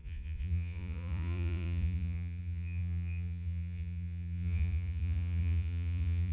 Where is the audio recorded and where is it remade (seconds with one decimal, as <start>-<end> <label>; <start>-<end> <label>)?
0.0-6.3 remade